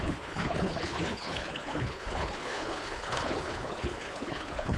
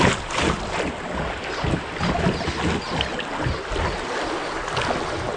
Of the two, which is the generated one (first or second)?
first